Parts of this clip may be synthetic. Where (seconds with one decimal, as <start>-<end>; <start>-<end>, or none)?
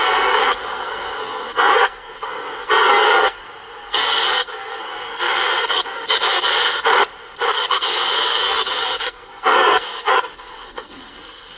0.0-6.9; 7.5-11.6